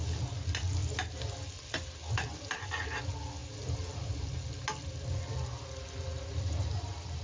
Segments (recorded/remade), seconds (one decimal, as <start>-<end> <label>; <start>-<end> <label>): 0.0-7.2 recorded